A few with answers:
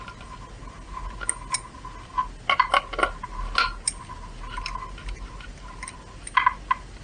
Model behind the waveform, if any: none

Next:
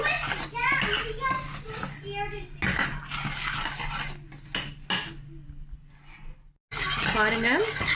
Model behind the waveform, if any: none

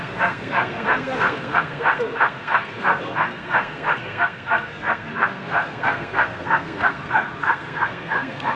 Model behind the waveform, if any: codec, SNAC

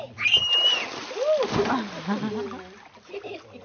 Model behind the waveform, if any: none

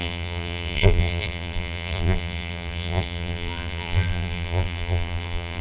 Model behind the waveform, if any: vocoder, BigVGAN v2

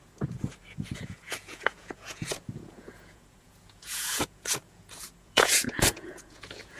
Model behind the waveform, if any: vocoder, Vocos